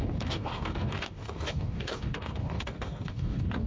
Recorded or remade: remade